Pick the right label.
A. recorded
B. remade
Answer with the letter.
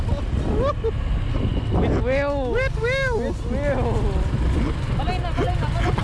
A